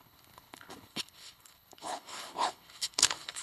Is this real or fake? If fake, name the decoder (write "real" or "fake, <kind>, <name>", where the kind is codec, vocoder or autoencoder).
fake, codec, HILCodec